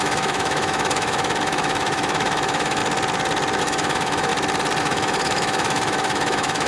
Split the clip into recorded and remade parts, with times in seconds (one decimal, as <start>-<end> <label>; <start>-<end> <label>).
0.0-2.8 remade; 2.8-3.6 recorded; 3.6-4.3 remade; 4.3-4.8 recorded; 4.8-6.7 remade